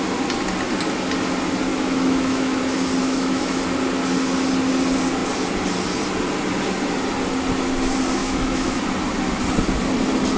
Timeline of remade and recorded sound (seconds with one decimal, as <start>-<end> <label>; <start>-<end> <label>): 0.0-1.7 recorded; 1.7-2.6 remade; 2.6-3.0 recorded; 3.0-3.6 remade; 3.6-8.2 recorded; 8.2-8.8 remade; 8.8-10.4 recorded